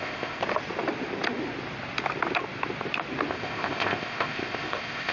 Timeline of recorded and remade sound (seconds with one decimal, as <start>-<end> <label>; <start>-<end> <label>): 0.0-0.4 remade; 0.4-3.3 recorded; 3.3-5.1 remade